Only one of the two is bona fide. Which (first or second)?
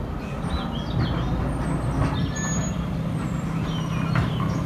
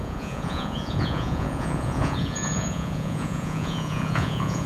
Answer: first